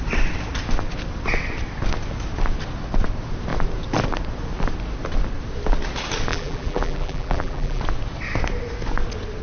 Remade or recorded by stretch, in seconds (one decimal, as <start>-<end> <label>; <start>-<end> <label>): 0.0-6.3 recorded; 6.3-7.8 remade; 7.8-9.4 recorded